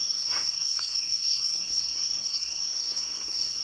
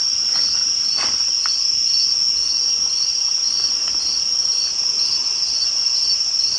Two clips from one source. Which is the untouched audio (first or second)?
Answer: second